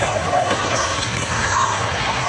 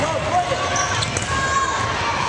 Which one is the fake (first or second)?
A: first